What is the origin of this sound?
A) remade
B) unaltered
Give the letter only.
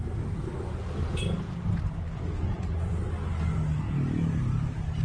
B